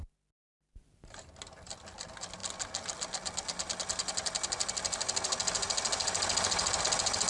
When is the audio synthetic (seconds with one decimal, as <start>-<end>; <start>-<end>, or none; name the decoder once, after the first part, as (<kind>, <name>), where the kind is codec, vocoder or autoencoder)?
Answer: none

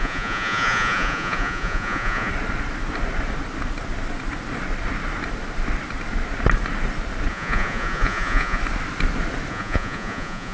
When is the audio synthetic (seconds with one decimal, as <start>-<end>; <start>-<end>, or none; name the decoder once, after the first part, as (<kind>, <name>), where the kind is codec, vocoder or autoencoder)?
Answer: 0.0-2.3 (vocoder, Vocos); 7.3-8.6; 9.5-10.5

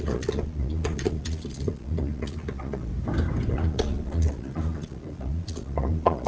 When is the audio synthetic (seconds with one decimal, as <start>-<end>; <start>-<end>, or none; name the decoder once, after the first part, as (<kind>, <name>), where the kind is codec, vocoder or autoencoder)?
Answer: 0.0-2.9 (vocoder, Vocos); 3.5-6.3

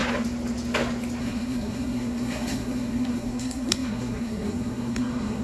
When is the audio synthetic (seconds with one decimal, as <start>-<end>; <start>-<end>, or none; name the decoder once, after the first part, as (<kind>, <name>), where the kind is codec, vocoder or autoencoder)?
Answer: 1.2-5.4 (codec, SNAC)

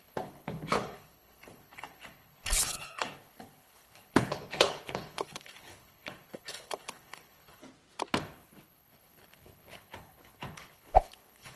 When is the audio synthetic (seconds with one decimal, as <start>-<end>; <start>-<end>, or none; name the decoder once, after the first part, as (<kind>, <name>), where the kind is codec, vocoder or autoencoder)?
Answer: 0.0-7.6 (codec, HILCodec); 8.2-11.6